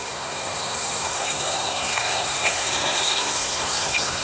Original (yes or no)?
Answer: no